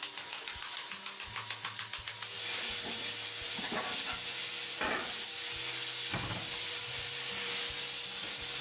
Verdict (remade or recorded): recorded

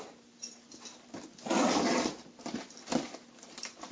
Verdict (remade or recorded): recorded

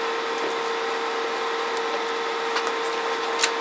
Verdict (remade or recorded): recorded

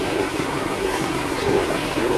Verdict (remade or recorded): remade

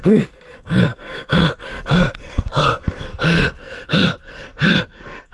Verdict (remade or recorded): remade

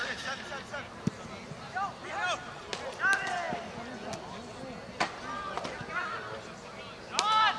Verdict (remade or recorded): recorded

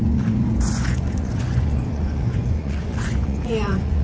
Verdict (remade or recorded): remade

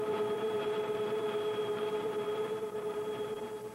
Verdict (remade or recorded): remade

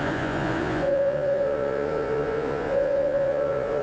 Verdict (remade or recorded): remade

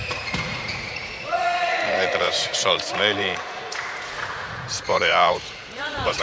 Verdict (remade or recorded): remade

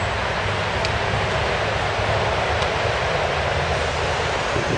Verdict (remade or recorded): recorded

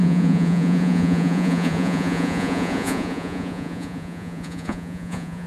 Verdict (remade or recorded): remade